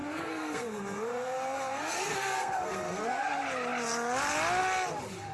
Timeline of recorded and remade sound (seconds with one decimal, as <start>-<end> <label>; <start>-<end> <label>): 0.0-3.2 remade; 3.2-5.3 recorded